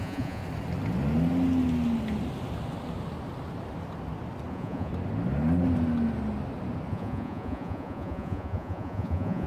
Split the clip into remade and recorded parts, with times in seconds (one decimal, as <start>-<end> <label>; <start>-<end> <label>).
0.0-0.4 remade; 0.4-4.5 recorded; 4.5-4.9 remade; 4.9-6.9 recorded; 6.9-9.5 remade